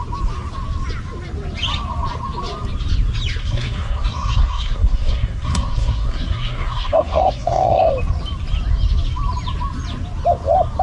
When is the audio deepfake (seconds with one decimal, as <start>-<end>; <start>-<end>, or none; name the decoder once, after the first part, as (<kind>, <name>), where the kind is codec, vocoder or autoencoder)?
3.4-7.9 (codec, SNAC)